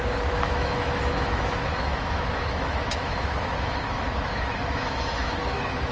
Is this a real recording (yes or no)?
no